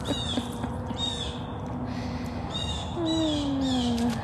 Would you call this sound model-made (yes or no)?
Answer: no